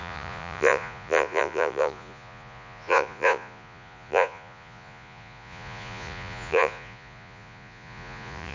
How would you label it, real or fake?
fake